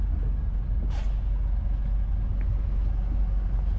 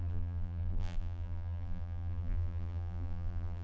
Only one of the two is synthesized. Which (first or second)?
second